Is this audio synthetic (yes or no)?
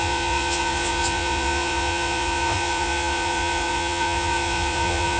yes